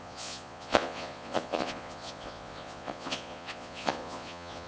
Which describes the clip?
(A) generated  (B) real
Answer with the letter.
A